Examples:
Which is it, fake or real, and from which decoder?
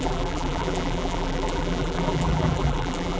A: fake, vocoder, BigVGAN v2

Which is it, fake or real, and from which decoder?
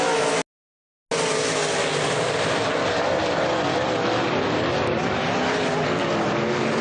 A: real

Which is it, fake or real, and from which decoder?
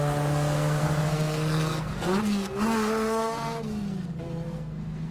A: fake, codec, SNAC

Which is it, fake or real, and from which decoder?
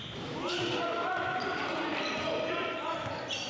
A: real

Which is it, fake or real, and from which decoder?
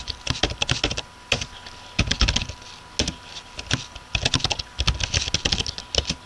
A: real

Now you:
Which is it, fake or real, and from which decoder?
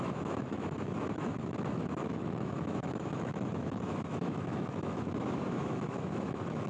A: fake, autoencoder, DAC-VAE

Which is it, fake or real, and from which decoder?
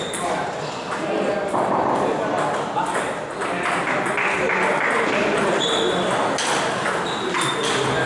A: real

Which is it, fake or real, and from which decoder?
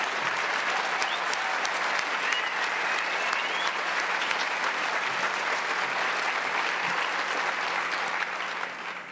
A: real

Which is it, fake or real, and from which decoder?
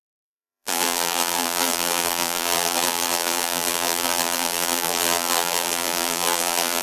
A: fake, vocoder, BigVGAN v2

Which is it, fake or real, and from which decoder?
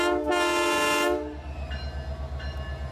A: real